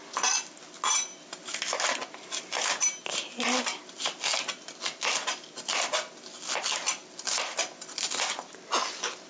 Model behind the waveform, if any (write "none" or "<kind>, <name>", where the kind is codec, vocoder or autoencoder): none